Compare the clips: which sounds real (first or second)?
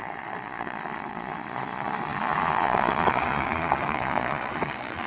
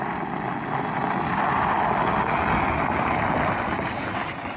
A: second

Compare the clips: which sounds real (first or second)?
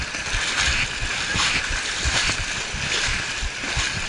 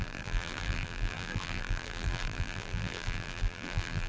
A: first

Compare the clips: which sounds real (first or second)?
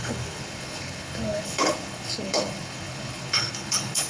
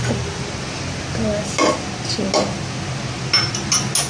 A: second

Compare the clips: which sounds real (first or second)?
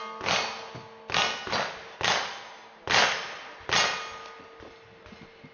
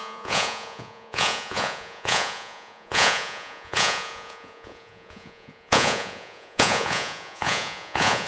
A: first